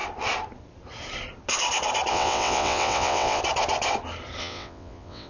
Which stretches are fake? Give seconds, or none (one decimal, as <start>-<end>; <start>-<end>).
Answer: 2.1-3.4; 4.4-5.3